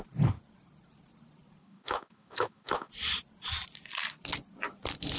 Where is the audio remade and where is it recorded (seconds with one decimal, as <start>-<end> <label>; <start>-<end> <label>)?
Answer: 0.0-1.6 recorded; 1.6-2.9 remade; 2.9-5.2 recorded